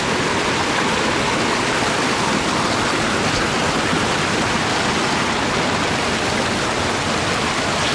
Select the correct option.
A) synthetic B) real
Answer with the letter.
B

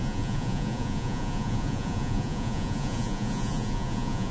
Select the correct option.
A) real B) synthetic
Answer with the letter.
B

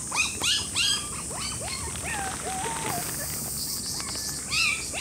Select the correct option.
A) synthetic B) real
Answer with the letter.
B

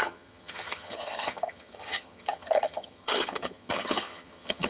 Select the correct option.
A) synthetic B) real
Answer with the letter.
A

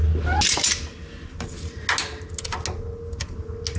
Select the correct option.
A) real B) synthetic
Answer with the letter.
A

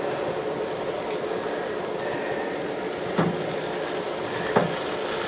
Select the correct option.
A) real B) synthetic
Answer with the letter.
A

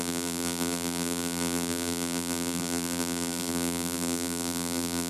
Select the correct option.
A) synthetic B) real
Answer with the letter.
A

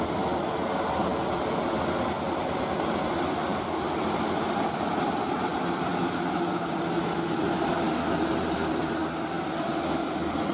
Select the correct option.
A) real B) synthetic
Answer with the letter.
A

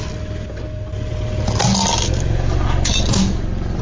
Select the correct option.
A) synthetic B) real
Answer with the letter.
B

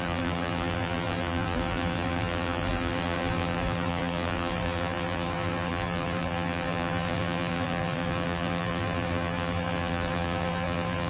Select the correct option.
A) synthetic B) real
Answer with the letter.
A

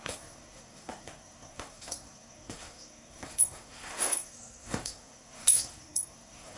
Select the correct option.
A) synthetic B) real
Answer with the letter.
A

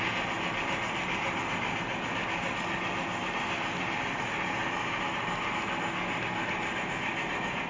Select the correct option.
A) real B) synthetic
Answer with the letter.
A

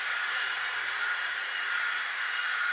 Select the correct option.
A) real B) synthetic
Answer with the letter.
B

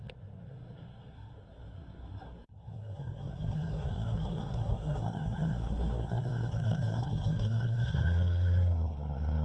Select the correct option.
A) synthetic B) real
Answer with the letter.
A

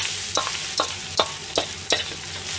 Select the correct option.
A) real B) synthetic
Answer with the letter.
A